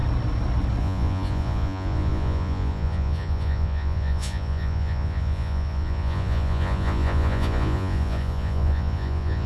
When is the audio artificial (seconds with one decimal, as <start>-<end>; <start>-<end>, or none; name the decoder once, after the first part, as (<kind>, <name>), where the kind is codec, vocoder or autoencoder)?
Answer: 0.8-9.5 (vocoder, Vocos)